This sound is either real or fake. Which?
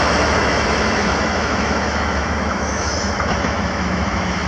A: fake